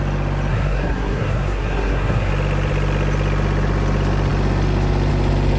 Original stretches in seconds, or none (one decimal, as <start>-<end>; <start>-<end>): 0.0-0.5; 2.3-5.6